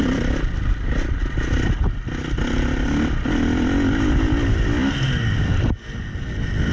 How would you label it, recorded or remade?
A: recorded